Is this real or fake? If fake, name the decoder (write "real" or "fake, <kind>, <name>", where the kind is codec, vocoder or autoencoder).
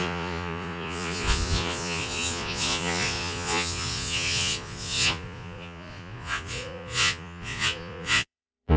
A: fake, vocoder, Vocos